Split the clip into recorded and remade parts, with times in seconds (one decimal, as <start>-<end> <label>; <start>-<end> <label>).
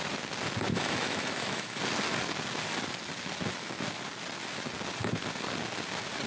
0.0-0.7 recorded; 0.7-1.8 remade; 1.8-6.3 recorded